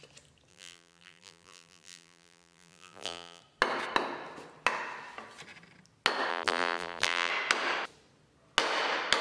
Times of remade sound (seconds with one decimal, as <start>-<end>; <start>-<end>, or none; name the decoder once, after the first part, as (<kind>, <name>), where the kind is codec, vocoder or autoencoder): 0.5-3.4 (vocoder, BigVGAN v2); 6.3-7.3